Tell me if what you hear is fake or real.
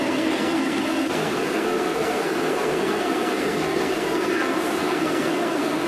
fake